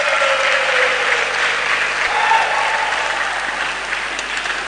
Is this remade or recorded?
recorded